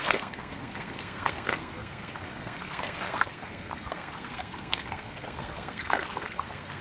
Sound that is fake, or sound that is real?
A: fake